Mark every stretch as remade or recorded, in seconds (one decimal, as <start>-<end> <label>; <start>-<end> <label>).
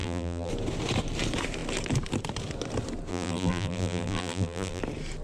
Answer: 0.0-0.5 remade; 0.5-3.1 recorded; 3.1-4.8 remade; 4.8-5.2 recorded